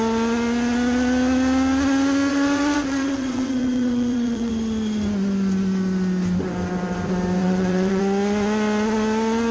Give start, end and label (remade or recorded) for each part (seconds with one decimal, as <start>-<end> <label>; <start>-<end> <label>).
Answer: 0.0-2.3 recorded; 2.3-4.5 remade; 4.5-7.4 recorded; 7.4-8.0 remade; 8.0-9.5 recorded